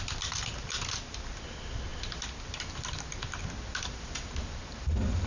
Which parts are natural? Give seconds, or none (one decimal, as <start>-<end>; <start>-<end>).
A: 0.0-5.3